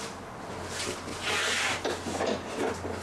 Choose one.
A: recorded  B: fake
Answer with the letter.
A